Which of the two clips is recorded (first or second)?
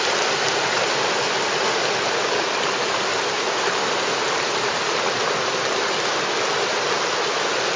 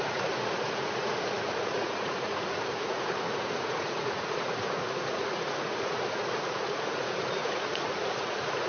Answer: first